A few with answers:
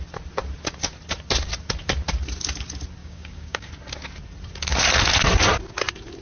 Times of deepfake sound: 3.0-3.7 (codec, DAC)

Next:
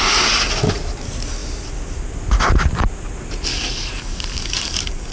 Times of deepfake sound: 3.5-5.1 (codec, DAC)

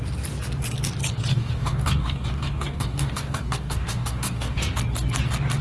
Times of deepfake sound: 1.3-4.7 (codec, DAC)

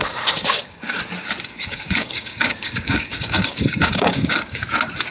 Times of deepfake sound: 0.0-1.0 (codec, DAC); 1.5-4.6

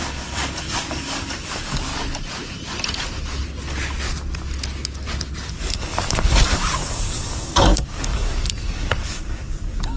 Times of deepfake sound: 0.0-1.9 (codec, DAC); 5.5-10.0

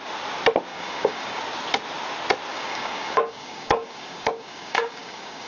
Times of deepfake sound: 0.7-1.4 (codec, DAC); 2.5-5.5